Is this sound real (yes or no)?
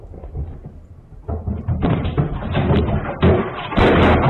yes